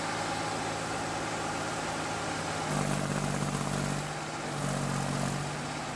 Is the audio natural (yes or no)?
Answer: yes